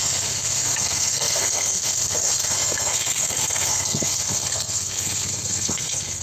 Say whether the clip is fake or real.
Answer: fake